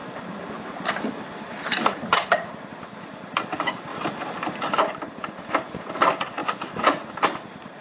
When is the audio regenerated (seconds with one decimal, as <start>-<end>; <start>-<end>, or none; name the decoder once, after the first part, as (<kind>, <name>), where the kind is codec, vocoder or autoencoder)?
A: 0.0-3.9 (vocoder, BigVGAN v2); 4.8-7.8